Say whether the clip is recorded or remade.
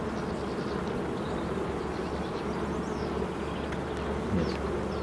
recorded